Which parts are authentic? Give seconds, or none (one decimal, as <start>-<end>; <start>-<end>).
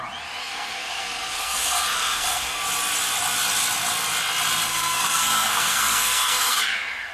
0.0-0.4; 2.6-4.7